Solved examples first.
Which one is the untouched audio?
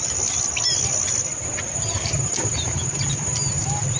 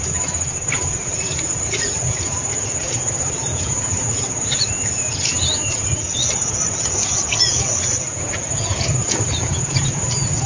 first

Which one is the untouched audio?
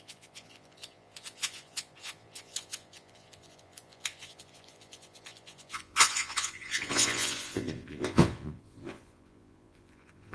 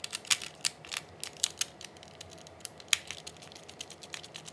second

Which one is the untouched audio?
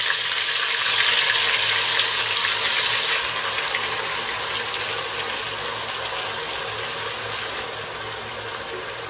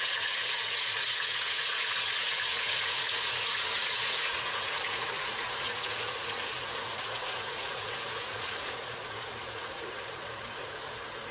first